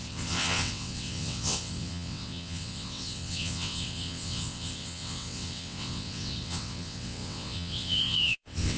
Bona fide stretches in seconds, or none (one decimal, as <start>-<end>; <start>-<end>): none